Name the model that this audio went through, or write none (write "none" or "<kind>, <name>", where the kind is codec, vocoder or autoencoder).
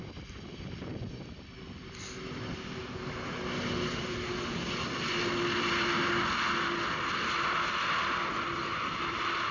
none